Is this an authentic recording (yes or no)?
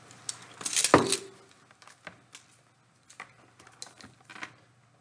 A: yes